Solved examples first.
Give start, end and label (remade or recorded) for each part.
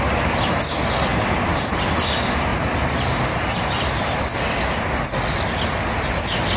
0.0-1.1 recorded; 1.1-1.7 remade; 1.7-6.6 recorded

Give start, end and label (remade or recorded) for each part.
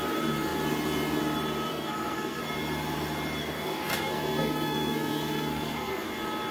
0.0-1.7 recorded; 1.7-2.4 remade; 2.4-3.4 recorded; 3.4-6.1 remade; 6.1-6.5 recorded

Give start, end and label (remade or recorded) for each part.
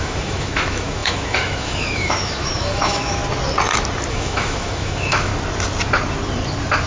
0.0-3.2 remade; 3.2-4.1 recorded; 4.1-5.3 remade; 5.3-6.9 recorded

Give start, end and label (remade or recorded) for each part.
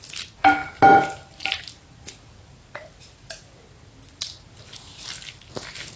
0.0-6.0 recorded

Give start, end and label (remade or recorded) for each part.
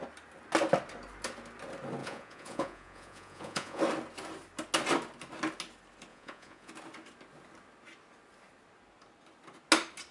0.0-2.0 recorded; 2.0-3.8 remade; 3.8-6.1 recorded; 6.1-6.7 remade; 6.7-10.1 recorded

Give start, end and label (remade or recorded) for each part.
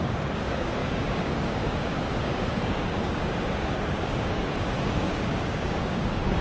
0.0-6.4 remade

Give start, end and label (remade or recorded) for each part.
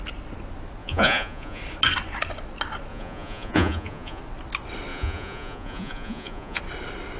0.0-0.8 recorded; 0.8-1.6 remade; 1.6-2.9 recorded; 2.9-4.2 remade; 4.2-4.9 recorded; 4.9-6.6 remade; 6.6-7.2 recorded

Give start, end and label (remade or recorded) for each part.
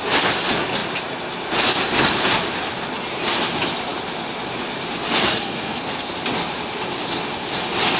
0.0-5.2 recorded; 5.2-6.1 remade; 6.1-8.0 recorded